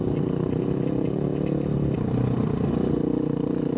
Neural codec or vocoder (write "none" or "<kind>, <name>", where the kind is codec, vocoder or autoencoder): none